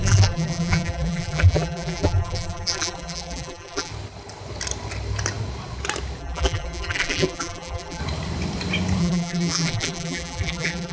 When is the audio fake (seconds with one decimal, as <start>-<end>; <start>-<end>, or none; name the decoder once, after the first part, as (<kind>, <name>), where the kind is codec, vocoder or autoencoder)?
0.0-3.9 (vocoder, BigVGAN v2); 6.2-8.0; 9.0-10.9